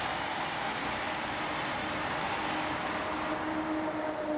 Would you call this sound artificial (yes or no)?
no